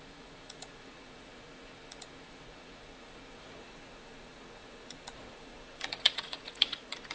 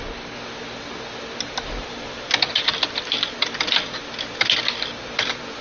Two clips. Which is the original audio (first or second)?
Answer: second